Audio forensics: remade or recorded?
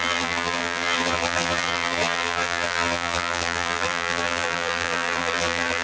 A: remade